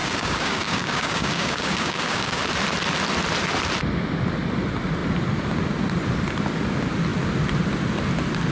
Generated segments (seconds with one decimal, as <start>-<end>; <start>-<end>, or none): 0.0-2.4